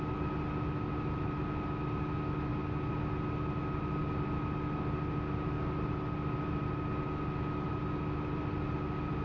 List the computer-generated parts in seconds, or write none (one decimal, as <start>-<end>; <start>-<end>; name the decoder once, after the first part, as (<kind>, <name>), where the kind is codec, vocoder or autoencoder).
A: none